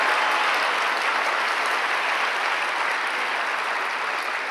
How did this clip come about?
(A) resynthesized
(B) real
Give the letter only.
B